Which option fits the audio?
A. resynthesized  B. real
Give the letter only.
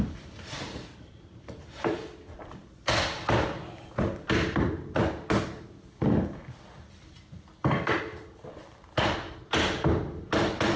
B